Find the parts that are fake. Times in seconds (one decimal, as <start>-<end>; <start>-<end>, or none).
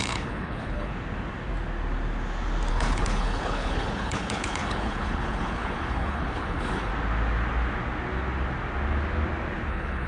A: 0.0-0.9; 2.7-6.9; 9.7-10.1